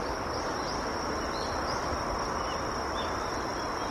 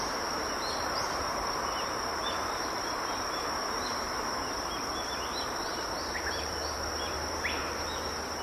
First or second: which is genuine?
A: first